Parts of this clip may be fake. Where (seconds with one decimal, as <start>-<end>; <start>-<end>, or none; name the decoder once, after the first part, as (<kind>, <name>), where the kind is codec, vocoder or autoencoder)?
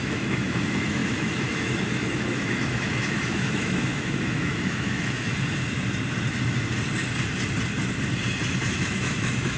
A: 0.0-5.3 (autoencoder, DAC-VAE); 8.7-9.6